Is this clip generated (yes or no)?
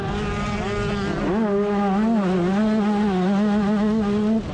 no